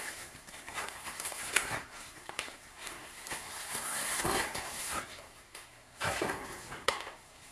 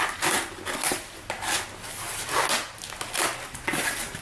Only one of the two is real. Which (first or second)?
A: second